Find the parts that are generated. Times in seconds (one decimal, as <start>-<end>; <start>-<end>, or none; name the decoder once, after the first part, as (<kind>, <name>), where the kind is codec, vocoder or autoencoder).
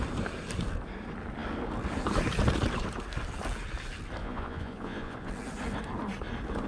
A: 4.2-5.3 (vocoder, Vocos)